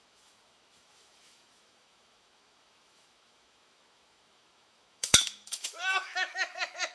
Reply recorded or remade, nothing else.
remade